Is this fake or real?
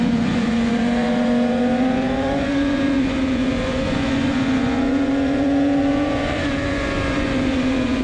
fake